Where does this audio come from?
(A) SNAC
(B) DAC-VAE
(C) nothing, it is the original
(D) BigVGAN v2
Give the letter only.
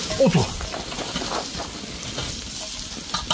C